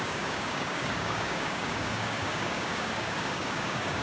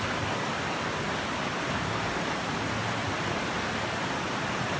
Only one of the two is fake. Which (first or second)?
first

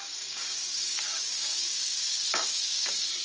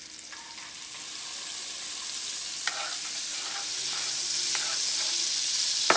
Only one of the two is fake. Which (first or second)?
first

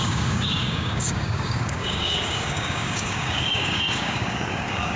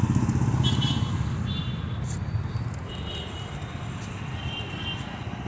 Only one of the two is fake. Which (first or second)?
first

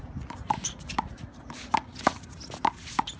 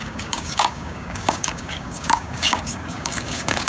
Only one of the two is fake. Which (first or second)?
second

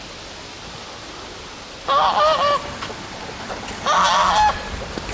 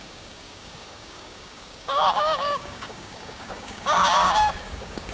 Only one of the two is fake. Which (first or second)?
second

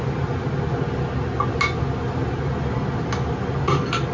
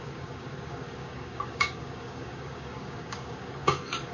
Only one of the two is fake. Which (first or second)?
second